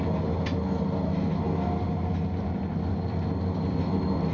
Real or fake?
real